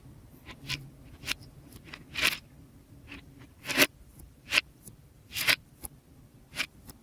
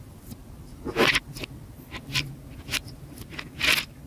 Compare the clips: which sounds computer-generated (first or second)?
first